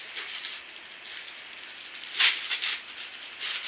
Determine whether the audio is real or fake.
real